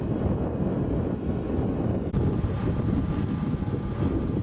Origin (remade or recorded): recorded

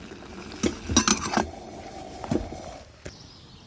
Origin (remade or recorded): recorded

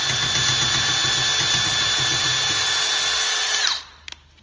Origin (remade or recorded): recorded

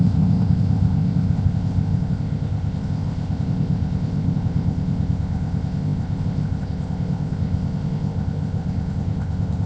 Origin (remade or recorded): remade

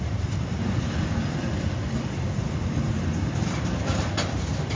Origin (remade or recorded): recorded